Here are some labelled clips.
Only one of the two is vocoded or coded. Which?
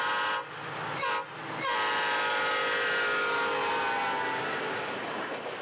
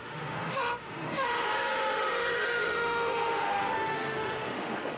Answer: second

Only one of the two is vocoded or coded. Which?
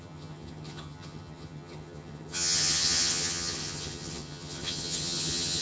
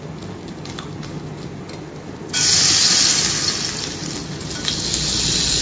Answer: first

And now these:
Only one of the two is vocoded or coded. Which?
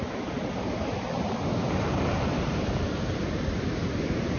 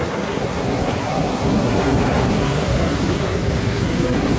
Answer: second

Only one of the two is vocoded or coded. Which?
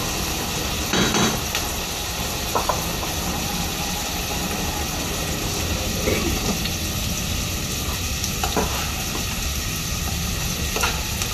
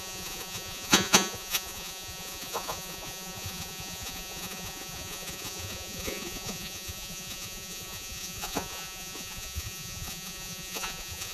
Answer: second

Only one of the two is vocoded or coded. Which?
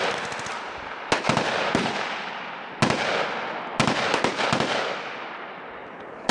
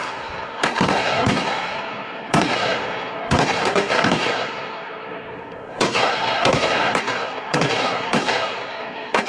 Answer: second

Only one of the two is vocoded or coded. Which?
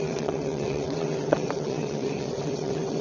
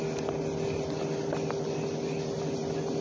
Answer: first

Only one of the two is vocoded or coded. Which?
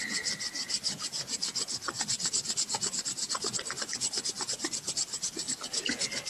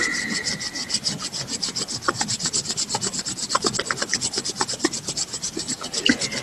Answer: second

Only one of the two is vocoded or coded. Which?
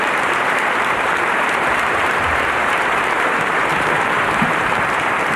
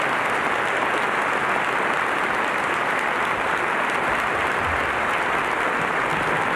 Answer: first